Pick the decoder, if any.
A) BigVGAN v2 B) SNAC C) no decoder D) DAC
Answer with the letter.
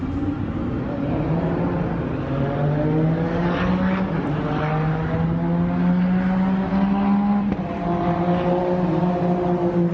C